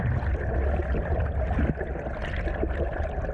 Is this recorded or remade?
recorded